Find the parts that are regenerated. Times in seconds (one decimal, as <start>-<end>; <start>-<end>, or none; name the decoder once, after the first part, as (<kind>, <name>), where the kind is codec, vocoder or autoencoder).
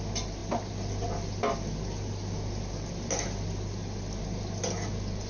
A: none